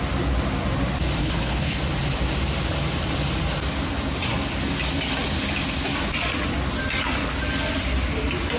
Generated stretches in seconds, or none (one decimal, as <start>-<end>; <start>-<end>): 1.2-1.8